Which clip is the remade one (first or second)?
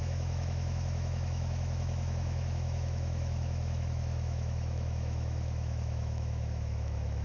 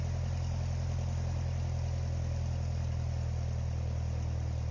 first